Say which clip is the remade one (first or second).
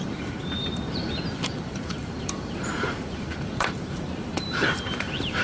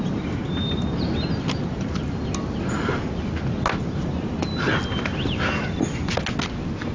first